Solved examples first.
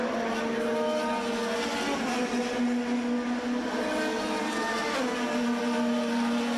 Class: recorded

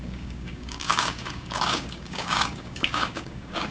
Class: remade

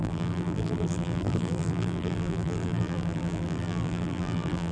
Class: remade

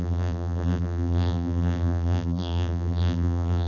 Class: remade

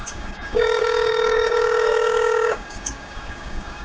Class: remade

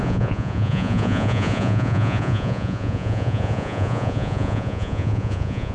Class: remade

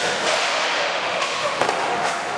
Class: remade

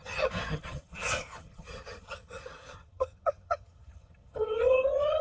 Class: remade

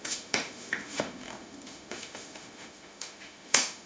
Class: remade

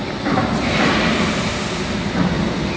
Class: recorded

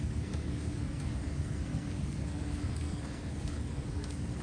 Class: remade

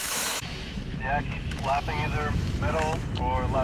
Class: remade